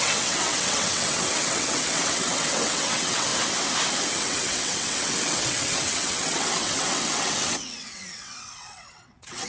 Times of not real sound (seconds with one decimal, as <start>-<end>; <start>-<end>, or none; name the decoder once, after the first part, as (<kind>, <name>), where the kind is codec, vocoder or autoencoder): 0.0-3.3 (vocoder, WaveNeXt); 4.1-9.5